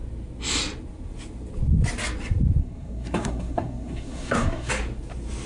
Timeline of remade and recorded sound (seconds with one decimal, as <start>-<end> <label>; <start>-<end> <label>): 0.0-2.6 recorded; 2.6-4.7 remade; 4.7-5.5 recorded